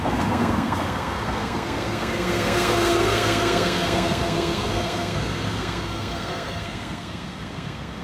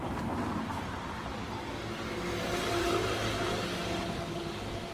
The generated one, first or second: first